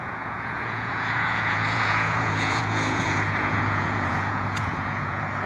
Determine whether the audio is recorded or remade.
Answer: remade